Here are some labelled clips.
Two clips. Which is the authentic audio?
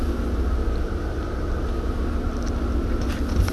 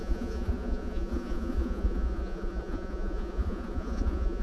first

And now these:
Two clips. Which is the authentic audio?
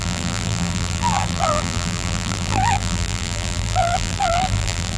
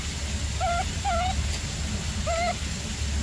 second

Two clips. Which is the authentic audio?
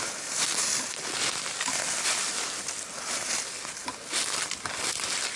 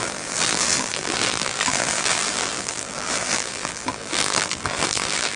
first